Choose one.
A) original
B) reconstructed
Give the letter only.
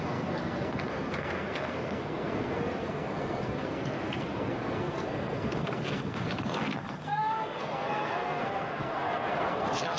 B